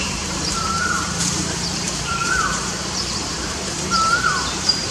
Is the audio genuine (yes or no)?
no